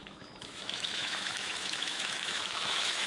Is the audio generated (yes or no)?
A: yes